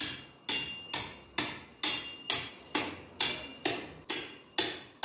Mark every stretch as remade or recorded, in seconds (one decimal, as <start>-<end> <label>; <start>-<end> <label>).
0.0-5.0 recorded